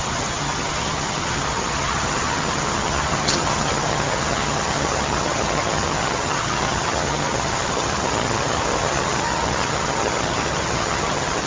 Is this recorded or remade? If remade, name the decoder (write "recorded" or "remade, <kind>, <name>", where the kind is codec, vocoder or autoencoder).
remade, vocoder, HiFi-GAN